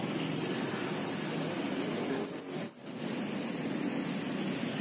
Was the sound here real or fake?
real